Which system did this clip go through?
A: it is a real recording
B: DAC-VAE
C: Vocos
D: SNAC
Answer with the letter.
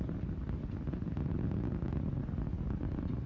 A